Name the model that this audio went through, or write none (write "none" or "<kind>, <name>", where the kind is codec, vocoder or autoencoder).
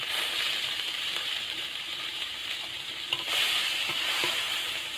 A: vocoder, BigVGAN v2